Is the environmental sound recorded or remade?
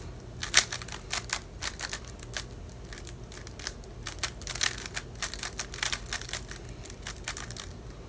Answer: recorded